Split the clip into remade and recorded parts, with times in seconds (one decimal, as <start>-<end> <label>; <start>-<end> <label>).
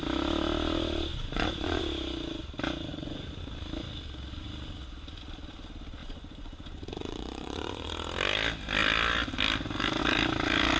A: 0.0-1.1 recorded; 1.1-1.8 remade; 1.8-2.9 recorded; 2.9-3.4 remade; 3.4-6.0 recorded; 6.0-7.9 remade; 7.9-10.8 recorded